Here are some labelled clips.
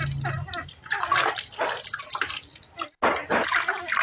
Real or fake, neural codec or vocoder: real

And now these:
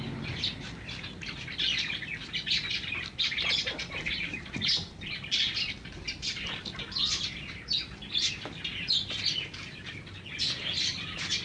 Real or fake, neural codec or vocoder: real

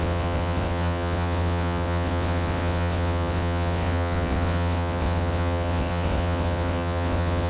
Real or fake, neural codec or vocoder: fake, vocoder, WaveNeXt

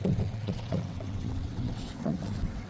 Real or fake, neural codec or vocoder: fake, vocoder, WaveNeXt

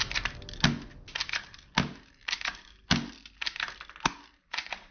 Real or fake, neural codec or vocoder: real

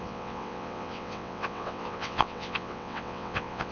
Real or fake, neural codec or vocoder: fake, vocoder, WaveNeXt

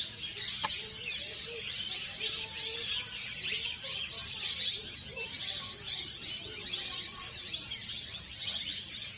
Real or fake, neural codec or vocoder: real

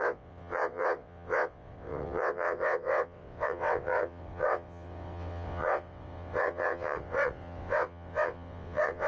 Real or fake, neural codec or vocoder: fake, vocoder, WaveNeXt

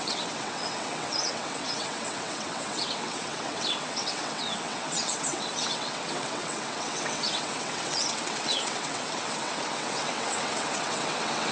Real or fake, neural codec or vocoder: fake, vocoder, WaveNeXt